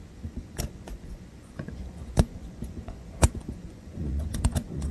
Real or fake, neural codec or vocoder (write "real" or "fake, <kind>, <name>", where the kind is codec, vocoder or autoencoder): fake, vocoder, Vocos